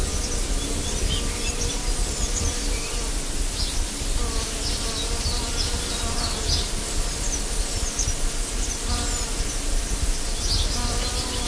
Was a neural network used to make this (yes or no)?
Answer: no